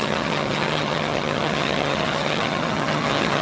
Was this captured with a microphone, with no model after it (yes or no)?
no